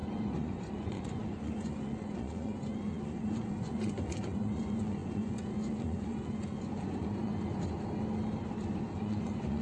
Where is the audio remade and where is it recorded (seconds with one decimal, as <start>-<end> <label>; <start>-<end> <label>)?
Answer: 0.0-7.3 remade; 7.3-9.0 recorded; 9.0-9.6 remade